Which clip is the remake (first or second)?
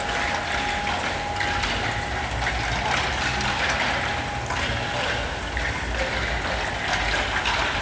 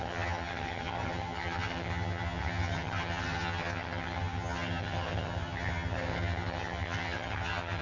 second